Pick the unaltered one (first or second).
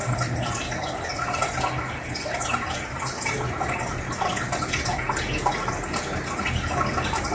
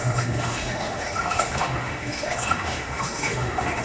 first